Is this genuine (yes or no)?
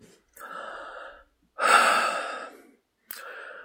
yes